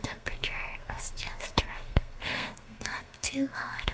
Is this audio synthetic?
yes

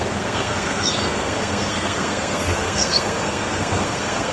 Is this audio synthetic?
yes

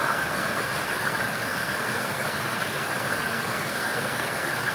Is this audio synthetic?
yes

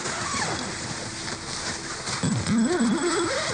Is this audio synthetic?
no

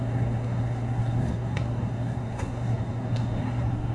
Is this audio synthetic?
yes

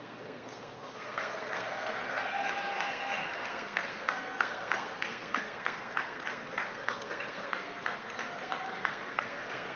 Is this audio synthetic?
yes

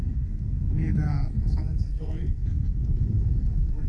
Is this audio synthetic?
yes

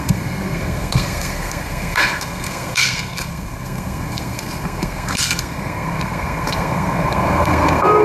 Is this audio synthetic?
yes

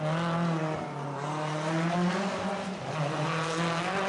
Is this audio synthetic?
no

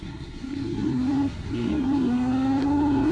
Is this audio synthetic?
yes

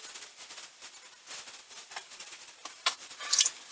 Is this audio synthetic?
no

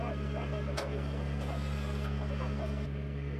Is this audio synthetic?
yes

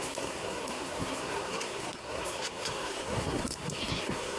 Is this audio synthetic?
yes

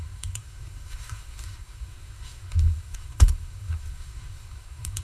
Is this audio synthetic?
yes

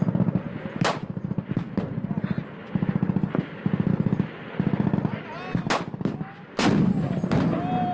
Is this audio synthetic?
no